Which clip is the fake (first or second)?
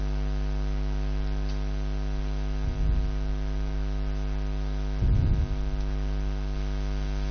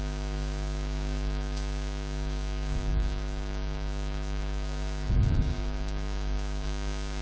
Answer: second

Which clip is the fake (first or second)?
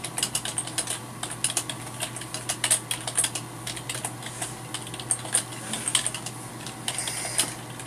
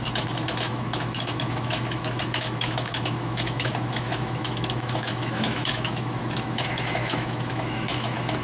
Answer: second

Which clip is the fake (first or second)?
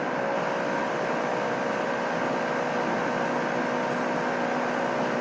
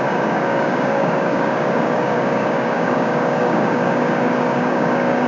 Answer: second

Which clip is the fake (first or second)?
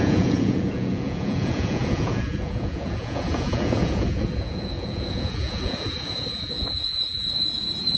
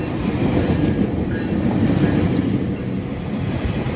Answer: first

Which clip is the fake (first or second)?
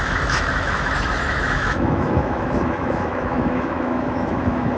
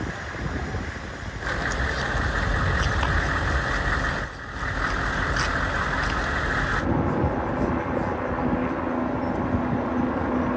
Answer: first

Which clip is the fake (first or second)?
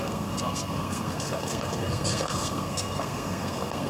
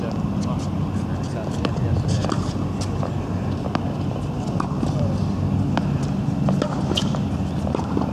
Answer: first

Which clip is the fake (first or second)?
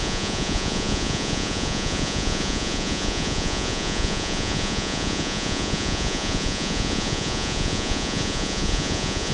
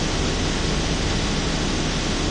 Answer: first